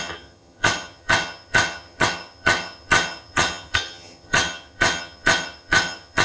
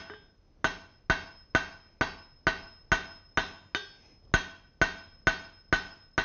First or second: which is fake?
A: first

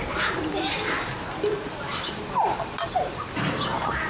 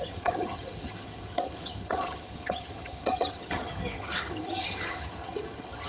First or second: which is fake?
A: second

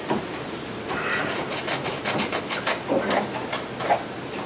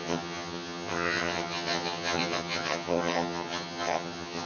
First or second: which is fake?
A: second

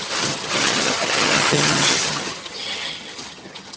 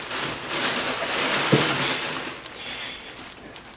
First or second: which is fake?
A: first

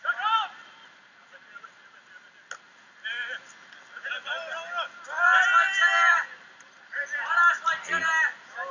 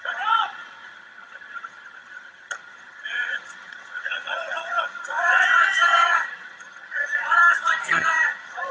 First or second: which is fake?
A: second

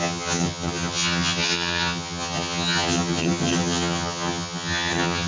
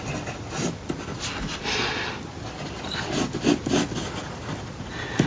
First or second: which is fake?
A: first